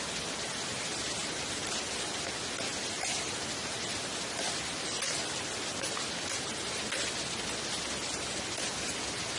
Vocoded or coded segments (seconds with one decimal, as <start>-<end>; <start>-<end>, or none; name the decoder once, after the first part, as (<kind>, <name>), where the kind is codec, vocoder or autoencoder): none